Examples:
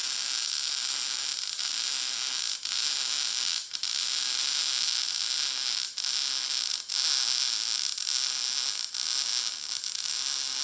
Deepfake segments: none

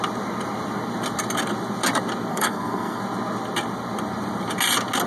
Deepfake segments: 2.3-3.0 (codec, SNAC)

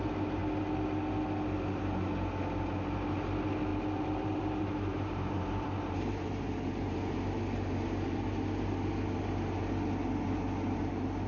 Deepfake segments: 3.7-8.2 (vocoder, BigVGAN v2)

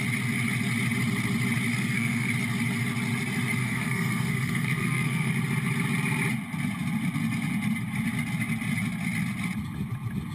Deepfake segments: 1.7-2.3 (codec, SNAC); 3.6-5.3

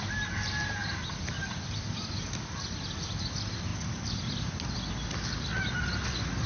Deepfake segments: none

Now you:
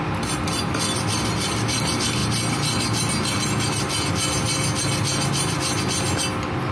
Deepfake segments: none

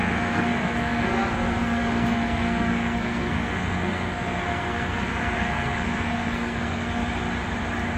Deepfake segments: 0.0-7.0 (codec, SNAC)